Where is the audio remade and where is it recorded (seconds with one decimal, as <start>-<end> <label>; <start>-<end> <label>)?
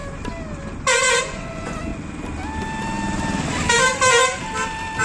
0.0-1.2 recorded; 1.2-1.9 remade; 1.9-5.0 recorded